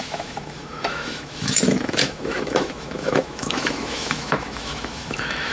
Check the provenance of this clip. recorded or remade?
remade